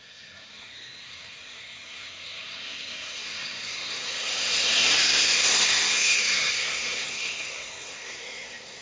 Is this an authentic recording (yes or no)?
no